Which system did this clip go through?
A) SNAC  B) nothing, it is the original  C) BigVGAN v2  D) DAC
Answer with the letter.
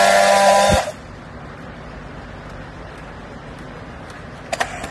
B